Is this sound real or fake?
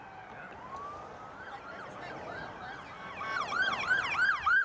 real